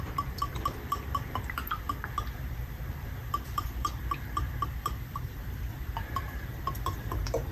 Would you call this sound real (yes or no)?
no